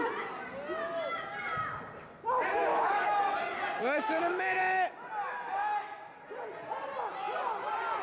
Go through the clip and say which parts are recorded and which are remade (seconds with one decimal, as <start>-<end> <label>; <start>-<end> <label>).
0.0-2.7 recorded; 2.7-3.2 remade; 3.2-3.8 recorded; 3.8-4.6 remade; 4.6-8.0 recorded